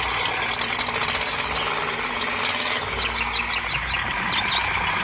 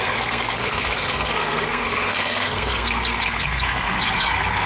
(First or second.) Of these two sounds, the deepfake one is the second